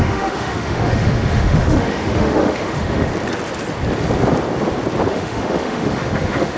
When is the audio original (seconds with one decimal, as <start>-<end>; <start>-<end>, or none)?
3.1-5.1